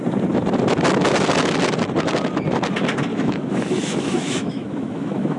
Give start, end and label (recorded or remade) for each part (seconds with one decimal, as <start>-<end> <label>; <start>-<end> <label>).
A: 0.0-3.1 recorded; 3.1-5.4 remade